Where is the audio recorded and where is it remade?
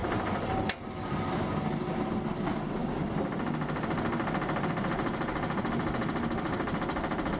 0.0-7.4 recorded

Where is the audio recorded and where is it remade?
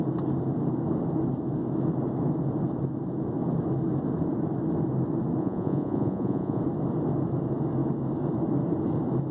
0.0-5.4 recorded; 5.4-6.6 remade; 6.6-9.3 recorded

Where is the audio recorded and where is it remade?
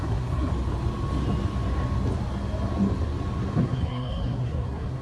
0.0-0.5 remade; 0.5-3.5 recorded; 3.5-5.0 remade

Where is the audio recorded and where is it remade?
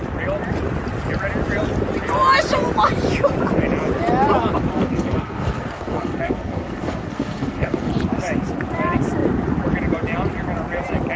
0.0-4.7 recorded; 4.7-7.9 remade; 7.9-11.2 recorded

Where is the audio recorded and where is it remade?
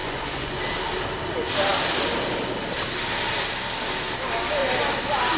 0.0-0.6 remade; 0.6-5.4 recorded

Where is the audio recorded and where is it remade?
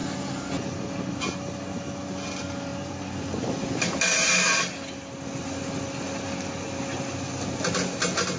0.0-8.4 recorded